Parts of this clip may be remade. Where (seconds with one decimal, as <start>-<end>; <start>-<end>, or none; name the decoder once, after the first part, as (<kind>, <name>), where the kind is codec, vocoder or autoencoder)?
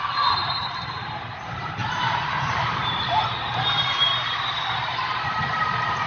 0.0-4.1 (vocoder, BigVGAN v2); 4.9-6.1